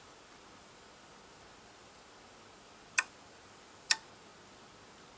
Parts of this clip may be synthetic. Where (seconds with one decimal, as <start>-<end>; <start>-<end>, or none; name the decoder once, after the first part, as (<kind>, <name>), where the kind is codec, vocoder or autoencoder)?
none